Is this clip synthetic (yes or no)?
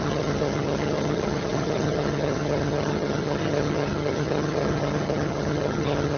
yes